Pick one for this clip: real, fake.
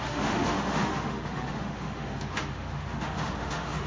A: fake